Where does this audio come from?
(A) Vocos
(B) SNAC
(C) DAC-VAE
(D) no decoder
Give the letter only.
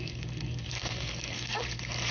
B